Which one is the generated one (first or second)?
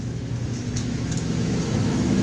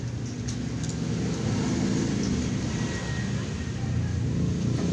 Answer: first